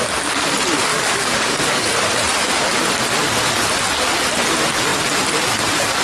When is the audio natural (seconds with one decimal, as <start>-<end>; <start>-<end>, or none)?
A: 0.0-0.9; 1.9-6.0

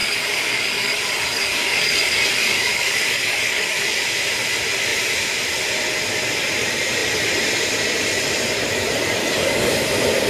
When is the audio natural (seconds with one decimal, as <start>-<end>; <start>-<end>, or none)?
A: 4.0-9.2; 9.7-10.3

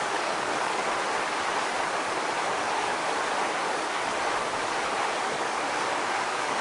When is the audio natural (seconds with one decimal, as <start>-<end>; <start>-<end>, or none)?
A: 0.8-2.4; 3.0-3.5; 4.1-5.2

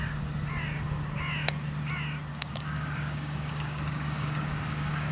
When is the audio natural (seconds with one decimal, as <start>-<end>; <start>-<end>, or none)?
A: 0.0-2.3

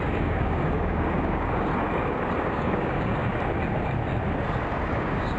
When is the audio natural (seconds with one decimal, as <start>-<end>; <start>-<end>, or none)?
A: 1.7-2.4; 3.2-4.9

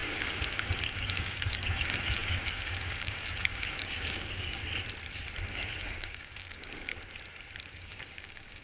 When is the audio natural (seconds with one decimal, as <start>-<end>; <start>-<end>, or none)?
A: 4.6-5.5; 6.9-7.7

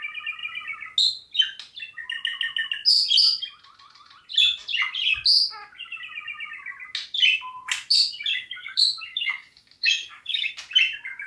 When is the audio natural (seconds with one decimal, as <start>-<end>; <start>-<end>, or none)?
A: 0.0-8.3; 10.5-11.3